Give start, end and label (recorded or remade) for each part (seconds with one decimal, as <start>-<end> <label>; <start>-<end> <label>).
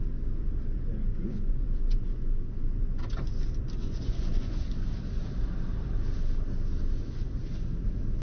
0.0-1.1 recorded; 1.1-3.1 remade; 3.1-3.8 recorded; 3.8-4.6 remade; 4.6-8.2 recorded